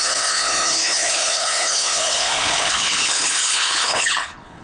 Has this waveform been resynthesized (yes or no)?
yes